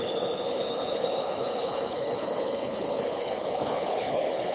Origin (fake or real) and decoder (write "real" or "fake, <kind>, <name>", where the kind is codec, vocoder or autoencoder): fake, codec, HILCodec